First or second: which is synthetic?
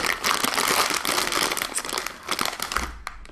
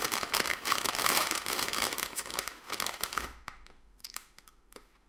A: second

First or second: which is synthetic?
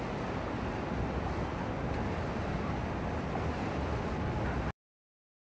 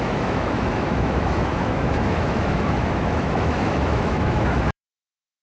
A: second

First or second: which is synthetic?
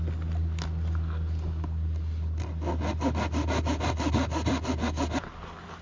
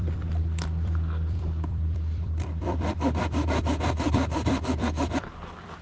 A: second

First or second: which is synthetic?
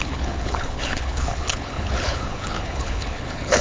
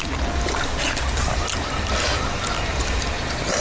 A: first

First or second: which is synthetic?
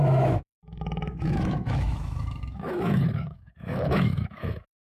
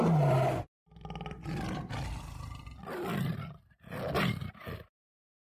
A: first